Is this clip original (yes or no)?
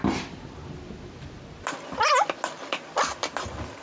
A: yes